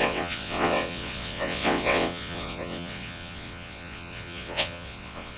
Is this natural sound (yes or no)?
no